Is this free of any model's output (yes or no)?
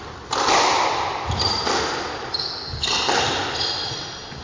yes